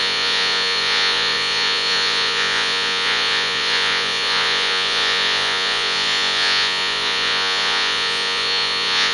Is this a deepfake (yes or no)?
yes